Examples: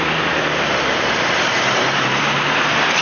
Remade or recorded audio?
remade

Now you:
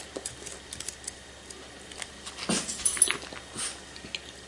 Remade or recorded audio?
recorded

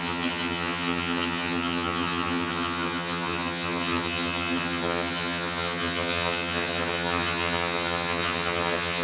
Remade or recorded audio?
remade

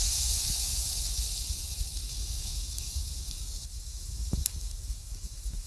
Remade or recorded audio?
remade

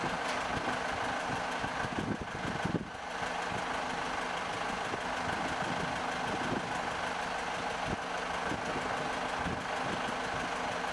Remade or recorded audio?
recorded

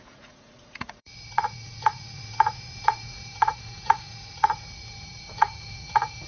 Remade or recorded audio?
remade